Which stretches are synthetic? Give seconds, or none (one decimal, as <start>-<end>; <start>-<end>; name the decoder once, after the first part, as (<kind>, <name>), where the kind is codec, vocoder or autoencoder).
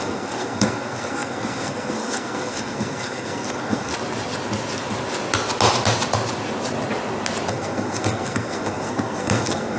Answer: 0.0-3.9 (codec, SNAC); 7.5-9.8